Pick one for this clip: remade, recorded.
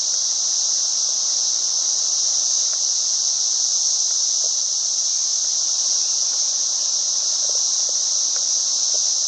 recorded